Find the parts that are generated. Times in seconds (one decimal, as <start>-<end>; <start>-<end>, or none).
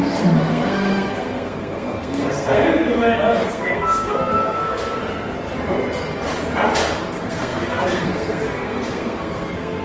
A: 0.0-5.0; 7.0-9.8